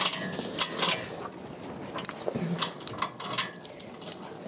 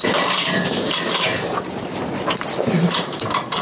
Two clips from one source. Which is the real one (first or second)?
first